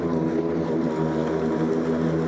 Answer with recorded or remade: recorded